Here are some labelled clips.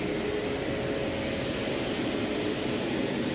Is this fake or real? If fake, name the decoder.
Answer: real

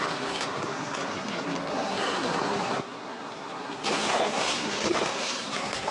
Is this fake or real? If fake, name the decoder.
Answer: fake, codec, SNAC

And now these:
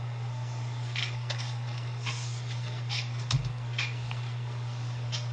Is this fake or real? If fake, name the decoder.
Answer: fake, codec, SNAC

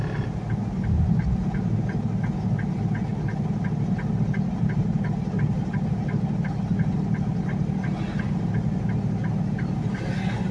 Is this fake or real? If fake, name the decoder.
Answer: real